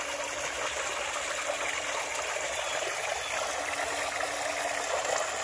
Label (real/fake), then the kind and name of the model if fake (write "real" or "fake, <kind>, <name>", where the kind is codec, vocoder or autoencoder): real